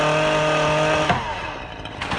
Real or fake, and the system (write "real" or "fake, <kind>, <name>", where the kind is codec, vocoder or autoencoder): real